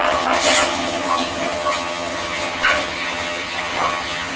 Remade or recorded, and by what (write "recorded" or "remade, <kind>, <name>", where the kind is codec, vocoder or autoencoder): remade, vocoder, HiFi-GAN